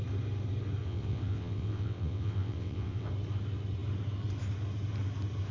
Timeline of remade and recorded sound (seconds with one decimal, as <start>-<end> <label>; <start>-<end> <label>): 0.0-0.8 recorded; 0.8-3.1 remade; 3.1-5.5 recorded

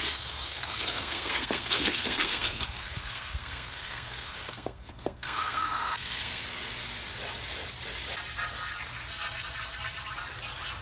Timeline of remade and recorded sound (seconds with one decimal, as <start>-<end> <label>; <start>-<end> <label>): 0.0-6.4 remade; 6.4-10.8 recorded

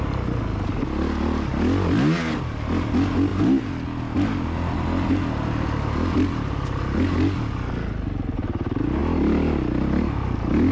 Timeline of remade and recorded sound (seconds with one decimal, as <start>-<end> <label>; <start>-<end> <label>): 0.0-10.7 recorded

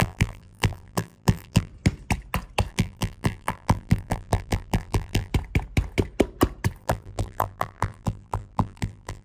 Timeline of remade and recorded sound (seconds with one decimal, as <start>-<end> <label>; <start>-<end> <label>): 0.0-1.7 remade; 1.7-2.7 recorded; 2.7-5.3 remade; 5.3-6.8 recorded; 6.8-9.2 remade